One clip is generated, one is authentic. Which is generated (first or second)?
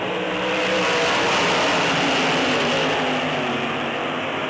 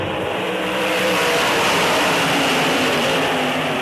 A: second